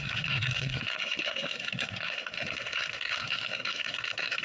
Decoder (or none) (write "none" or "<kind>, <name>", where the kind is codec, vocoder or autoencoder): codec, SNAC